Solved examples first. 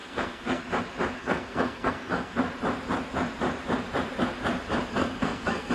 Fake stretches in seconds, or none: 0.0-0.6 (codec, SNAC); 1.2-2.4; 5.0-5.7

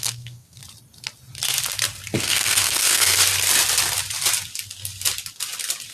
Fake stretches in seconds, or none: 0.0-0.6 (codec, SNAC); 2.2-3.2

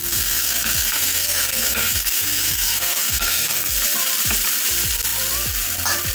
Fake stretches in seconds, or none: 0.0-3.7 (codec, SNAC)

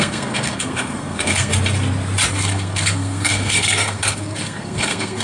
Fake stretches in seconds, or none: 0.0-1.5 (codec, SNAC); 2.3-5.2

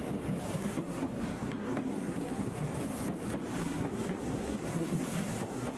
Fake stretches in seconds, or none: 0.4-2.7 (codec, SNAC); 3.6-5.8